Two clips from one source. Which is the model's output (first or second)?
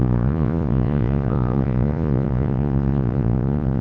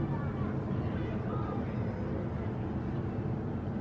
first